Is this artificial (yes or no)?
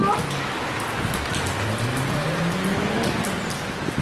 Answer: no